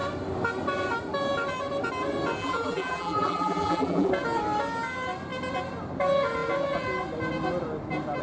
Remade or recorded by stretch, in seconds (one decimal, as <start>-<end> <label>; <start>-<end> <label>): 0.0-2.4 recorded; 2.4-4.1 remade; 4.1-8.2 recorded

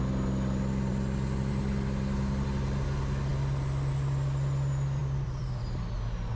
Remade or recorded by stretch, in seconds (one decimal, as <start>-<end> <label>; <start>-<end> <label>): 0.0-0.9 recorded; 0.9-1.5 remade; 1.5-5.0 recorded; 5.0-5.9 remade; 5.9-6.4 recorded

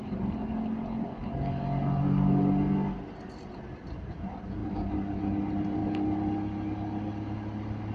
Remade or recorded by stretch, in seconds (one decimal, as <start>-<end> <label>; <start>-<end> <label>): 0.0-7.9 recorded

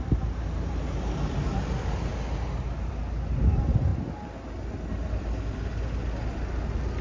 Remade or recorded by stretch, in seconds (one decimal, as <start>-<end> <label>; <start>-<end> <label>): 0.0-7.0 recorded

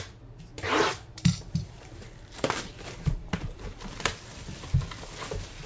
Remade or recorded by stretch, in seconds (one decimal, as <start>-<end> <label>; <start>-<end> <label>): 0.0-0.5 recorded; 0.5-3.9 remade; 3.9-5.7 recorded